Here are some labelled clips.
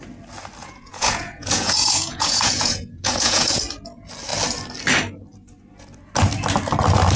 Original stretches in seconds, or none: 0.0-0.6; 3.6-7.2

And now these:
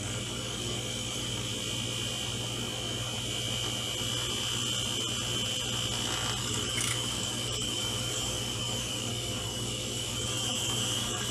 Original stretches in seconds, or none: 1.5-6.4

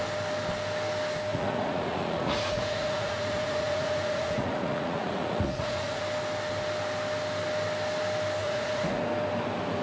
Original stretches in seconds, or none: 0.0-1.3; 6.0-8.4; 9.0-9.8

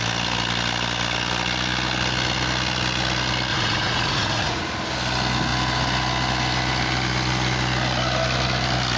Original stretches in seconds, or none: 0.0-3.5; 4.7-9.0